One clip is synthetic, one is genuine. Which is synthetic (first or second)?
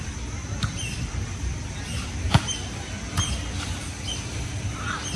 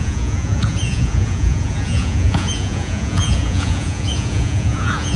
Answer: second